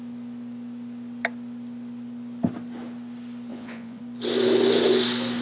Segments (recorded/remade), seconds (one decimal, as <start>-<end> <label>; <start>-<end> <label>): 0.0-3.5 recorded; 3.5-4.0 remade; 4.0-5.4 recorded

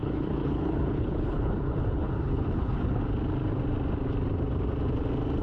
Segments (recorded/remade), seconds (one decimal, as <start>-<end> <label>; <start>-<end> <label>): 0.0-3.0 remade; 3.0-5.4 recorded

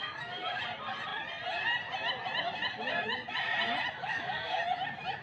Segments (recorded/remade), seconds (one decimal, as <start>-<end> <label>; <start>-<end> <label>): 0.0-0.6 remade; 0.6-4.0 recorded; 4.0-4.6 remade; 4.6-5.2 recorded

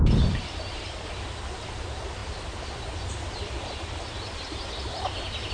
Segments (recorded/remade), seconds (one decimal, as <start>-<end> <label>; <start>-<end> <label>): 0.0-5.5 recorded